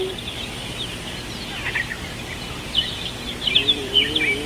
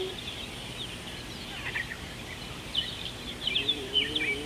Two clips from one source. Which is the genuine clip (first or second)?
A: first